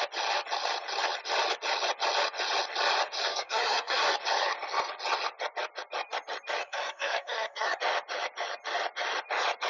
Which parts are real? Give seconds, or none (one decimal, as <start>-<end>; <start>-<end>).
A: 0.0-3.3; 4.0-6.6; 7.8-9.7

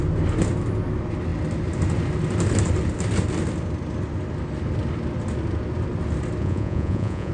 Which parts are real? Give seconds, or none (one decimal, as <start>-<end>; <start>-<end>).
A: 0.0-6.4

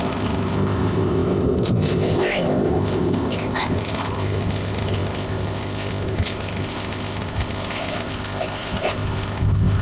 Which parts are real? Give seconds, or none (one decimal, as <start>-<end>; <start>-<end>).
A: none

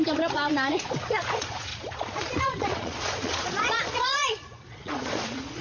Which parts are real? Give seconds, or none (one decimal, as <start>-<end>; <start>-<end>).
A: none

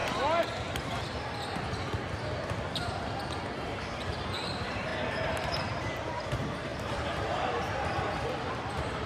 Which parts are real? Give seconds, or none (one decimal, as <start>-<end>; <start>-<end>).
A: 0.0-4.1

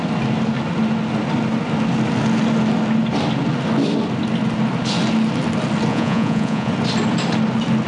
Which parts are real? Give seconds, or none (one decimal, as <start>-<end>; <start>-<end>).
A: 0.0-5.9; 6.7-7.9

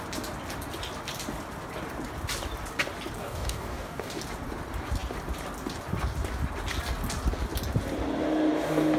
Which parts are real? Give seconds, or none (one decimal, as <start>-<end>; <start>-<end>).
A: 0.0-3.2; 4.2-9.0

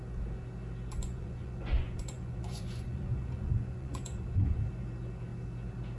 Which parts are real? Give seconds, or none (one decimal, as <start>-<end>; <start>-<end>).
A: 0.0-1.0; 4.6-6.0